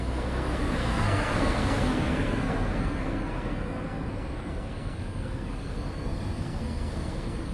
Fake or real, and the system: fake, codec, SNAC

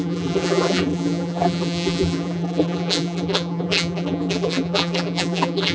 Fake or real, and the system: fake, vocoder, BigVGAN v2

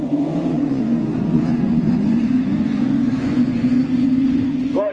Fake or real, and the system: fake, vocoder, Vocos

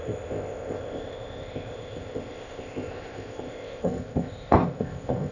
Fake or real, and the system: fake, codec, ZipCodec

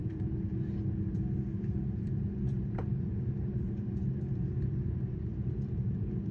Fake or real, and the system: fake, vocoder, BigVGAN v2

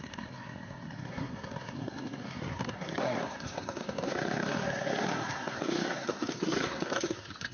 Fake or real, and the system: fake, codec, SNAC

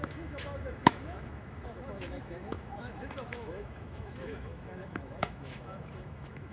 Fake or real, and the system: fake, autoencoder, DAC-VAE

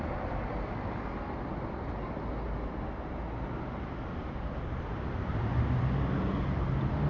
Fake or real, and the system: real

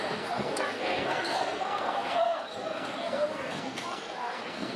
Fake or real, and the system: fake, codec, SNAC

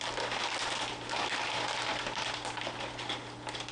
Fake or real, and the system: real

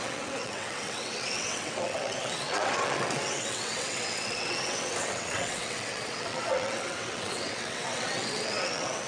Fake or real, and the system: fake, vocoder, WaveNeXt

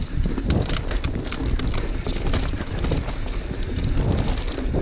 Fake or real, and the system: real